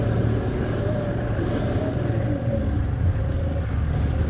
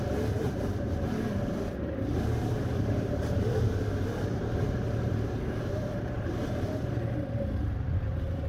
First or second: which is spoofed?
second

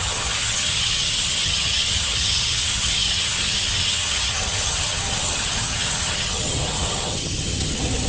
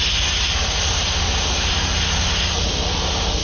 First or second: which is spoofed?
first